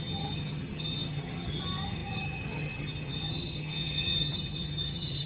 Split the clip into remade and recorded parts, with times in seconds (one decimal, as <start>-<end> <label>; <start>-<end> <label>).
0.0-5.3 remade